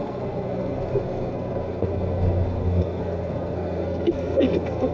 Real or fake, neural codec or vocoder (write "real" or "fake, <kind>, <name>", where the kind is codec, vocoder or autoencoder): fake, codec, SNAC